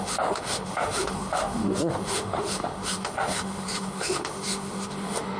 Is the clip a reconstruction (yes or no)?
yes